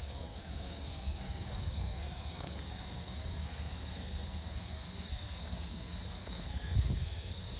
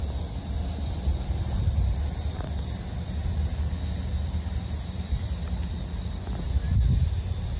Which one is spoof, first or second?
first